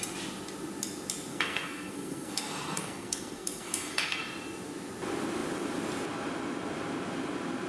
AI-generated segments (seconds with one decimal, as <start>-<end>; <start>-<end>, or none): 1.3-4.2